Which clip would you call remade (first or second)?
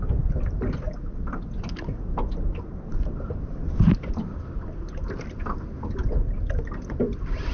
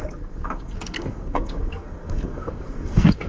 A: second